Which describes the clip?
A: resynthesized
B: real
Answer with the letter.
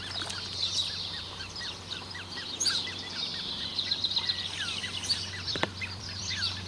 A